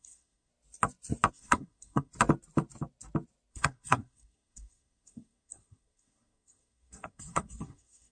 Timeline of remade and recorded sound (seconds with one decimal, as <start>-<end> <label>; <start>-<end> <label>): 0.0-0.5 remade; 0.5-1.3 recorded; 1.3-2.1 remade; 2.1-3.5 recorded; 3.5-8.1 remade